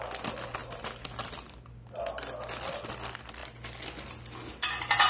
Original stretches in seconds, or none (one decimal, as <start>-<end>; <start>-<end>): 0.0-5.1